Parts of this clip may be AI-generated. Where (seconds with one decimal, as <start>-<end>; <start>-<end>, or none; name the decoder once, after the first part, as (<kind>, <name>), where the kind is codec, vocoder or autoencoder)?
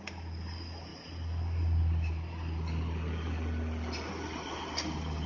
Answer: none